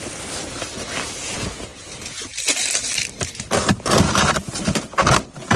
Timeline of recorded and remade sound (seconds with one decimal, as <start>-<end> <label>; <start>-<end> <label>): 0.0-5.6 recorded